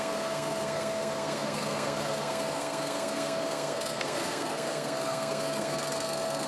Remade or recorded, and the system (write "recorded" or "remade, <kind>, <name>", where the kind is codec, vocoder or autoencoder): remade, codec, SNAC